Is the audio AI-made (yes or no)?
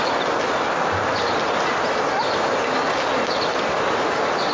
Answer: no